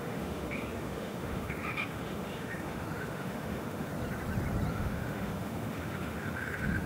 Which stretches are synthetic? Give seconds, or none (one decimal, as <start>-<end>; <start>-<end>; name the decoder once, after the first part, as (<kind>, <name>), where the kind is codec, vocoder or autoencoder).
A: 0.0-3.9 (autoencoder, DAC-VAE); 4.7-6.9